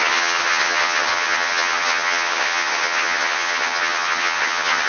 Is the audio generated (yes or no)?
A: yes